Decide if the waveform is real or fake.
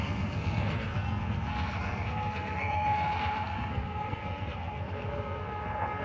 fake